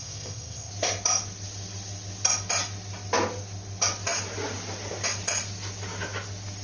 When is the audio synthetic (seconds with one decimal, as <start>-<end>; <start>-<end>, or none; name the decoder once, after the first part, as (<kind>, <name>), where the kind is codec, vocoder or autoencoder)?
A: 0.0-0.7 (codec, ZipCodec)